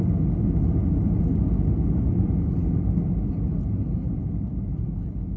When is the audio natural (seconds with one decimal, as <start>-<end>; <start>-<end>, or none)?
0.0-5.4